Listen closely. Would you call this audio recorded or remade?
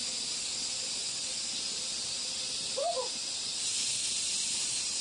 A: remade